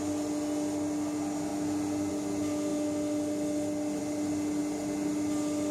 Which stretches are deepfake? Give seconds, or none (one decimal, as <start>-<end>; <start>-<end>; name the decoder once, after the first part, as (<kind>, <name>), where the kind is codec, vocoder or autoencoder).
none